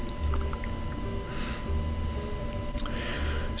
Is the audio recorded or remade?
recorded